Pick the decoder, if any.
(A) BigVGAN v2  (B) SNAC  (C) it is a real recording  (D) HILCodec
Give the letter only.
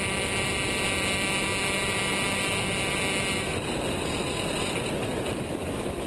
C